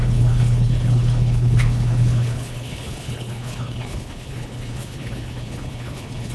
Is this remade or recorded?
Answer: remade